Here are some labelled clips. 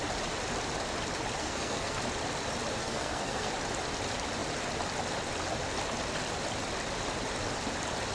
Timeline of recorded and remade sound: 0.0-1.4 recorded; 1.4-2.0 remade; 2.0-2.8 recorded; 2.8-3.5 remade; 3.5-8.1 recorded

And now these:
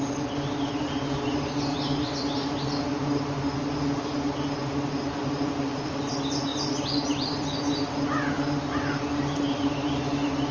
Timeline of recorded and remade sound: 0.0-10.5 recorded

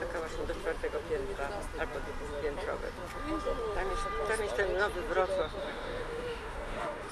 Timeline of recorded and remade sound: 0.0-5.6 recorded; 5.6-7.1 remade

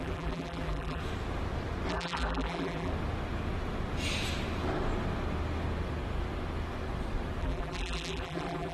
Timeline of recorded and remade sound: 0.0-1.0 remade; 1.0-1.9 recorded; 1.9-2.9 remade; 2.9-7.4 recorded; 7.4-8.7 remade

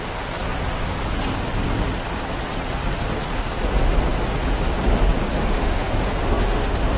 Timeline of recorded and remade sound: 0.0-5.3 recorded; 5.3-7.0 remade

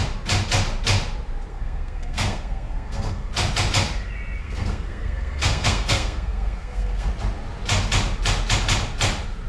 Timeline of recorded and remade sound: 0.0-1.5 recorded; 1.5-3.3 remade; 3.3-4.4 recorded; 4.4-7.1 remade; 7.1-9.5 recorded

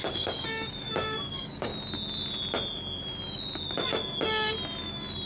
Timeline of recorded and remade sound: 0.0-1.7 remade; 1.7-5.3 recorded

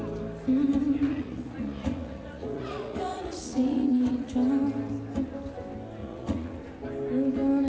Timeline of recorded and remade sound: 0.0-1.1 recorded; 1.1-4.3 remade; 4.3-6.0 recorded; 6.0-6.6 remade; 6.6-7.7 recorded